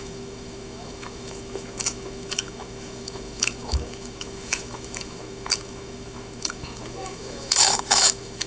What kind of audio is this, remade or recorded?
remade